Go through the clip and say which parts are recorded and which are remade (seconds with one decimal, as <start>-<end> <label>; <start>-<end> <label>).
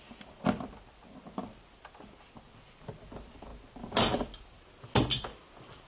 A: 0.0-5.9 recorded